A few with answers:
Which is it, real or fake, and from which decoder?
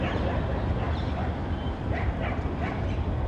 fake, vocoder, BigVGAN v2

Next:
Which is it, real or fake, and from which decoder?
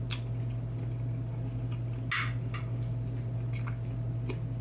real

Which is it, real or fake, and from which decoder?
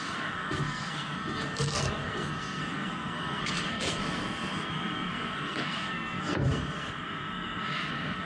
fake, codec, SNAC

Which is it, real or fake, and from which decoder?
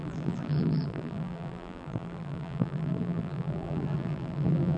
fake, vocoder, BigVGAN v2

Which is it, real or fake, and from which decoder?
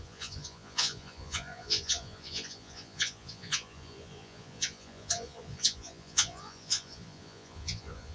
fake, vocoder, Vocos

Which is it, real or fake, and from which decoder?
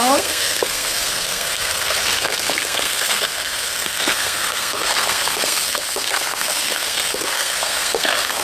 fake, codec, SNAC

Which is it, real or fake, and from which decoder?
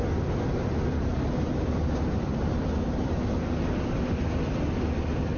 real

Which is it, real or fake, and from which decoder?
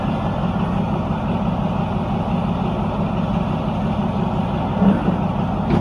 real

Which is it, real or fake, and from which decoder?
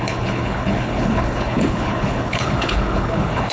fake, codec, HILCodec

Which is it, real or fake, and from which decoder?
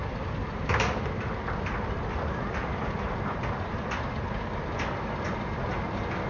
real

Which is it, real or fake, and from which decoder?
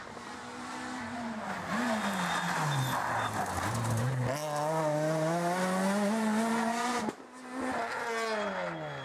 real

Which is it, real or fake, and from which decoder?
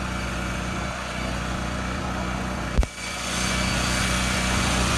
fake, vocoder, Vocos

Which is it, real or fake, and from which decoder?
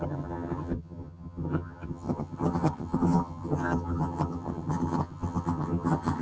fake, vocoder, HiFi-GAN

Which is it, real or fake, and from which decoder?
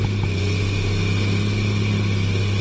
real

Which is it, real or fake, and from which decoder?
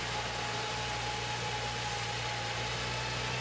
real